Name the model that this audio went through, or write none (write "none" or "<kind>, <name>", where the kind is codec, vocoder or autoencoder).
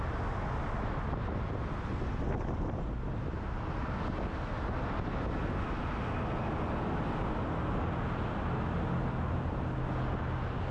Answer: none